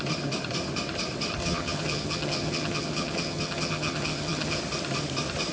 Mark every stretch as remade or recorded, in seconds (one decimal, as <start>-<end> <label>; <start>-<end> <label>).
0.0-1.4 recorded; 1.4-4.6 remade; 4.6-5.5 recorded